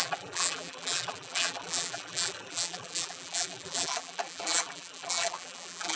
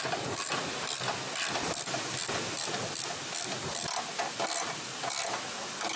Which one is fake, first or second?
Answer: first